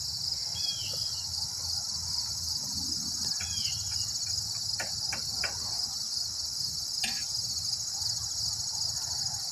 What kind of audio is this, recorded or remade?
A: recorded